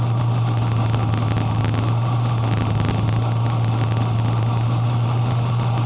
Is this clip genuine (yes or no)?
yes